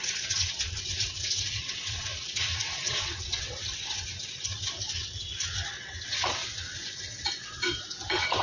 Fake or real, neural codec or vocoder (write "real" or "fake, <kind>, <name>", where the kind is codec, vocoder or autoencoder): fake, vocoder, WaveNeXt